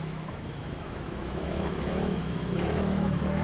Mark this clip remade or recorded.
remade